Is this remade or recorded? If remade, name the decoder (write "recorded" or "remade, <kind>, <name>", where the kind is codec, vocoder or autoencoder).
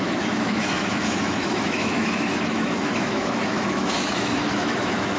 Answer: remade, autoencoder, DAC-VAE